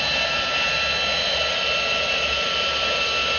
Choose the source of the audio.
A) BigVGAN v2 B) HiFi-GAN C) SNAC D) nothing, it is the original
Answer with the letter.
D